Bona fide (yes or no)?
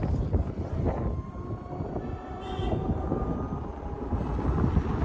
yes